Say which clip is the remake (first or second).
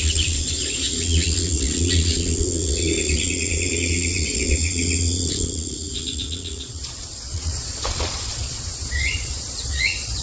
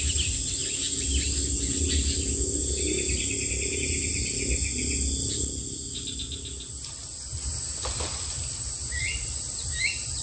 first